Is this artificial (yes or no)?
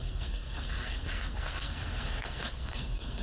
yes